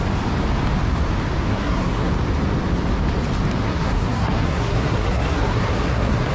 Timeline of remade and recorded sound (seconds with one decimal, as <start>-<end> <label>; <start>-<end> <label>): 0.0-1.5 recorded; 1.5-2.1 remade; 2.1-3.6 recorded; 3.6-6.3 remade